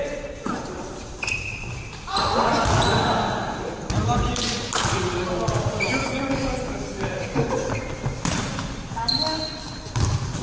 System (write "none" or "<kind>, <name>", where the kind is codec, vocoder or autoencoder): none